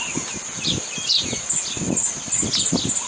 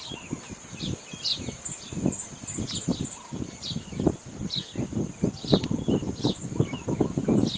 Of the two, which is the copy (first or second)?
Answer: second